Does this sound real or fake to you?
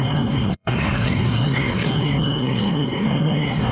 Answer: fake